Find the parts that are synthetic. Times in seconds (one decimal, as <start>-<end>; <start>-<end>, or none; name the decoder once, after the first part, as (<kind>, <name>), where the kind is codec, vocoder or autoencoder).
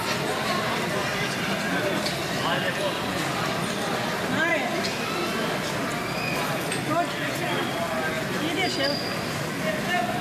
none